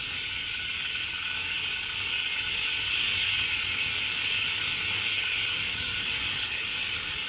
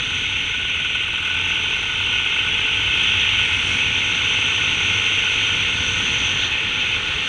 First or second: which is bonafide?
second